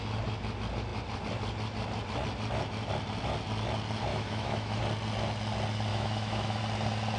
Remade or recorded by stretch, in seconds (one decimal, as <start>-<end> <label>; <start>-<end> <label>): 0.0-4.1 recorded; 4.1-4.8 remade; 4.8-5.9 recorded; 5.9-6.6 remade; 6.6-7.2 recorded